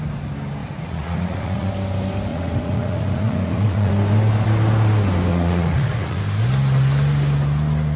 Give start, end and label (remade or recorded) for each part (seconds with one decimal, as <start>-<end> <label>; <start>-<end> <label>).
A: 0.0-0.6 recorded; 0.6-1.7 remade; 1.7-2.3 recorded; 2.3-3.9 remade; 3.9-5.3 recorded; 5.3-6.2 remade; 6.2-8.0 recorded